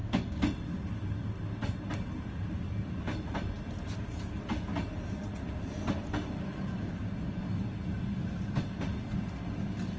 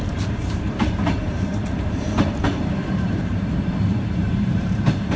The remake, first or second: second